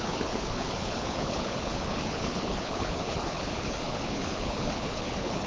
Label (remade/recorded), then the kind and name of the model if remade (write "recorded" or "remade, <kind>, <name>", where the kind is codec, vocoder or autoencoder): remade, codec, HILCodec